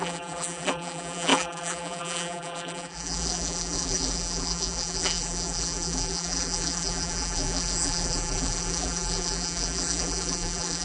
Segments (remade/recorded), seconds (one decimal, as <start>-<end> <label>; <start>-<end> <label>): 0.0-10.8 remade